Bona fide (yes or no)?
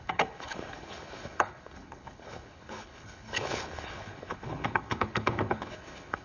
no